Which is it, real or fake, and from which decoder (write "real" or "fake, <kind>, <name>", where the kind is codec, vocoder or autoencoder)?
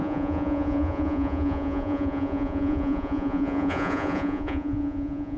fake, vocoder, Vocos